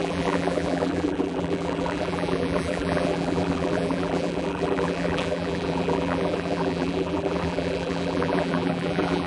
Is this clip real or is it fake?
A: fake